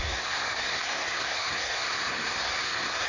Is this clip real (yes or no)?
no